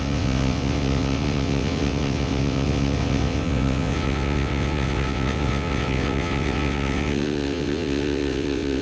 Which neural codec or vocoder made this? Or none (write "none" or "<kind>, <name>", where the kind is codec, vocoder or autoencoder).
vocoder, WaveNeXt